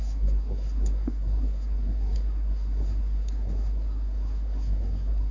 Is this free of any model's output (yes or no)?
no